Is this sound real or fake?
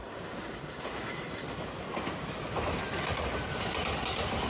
real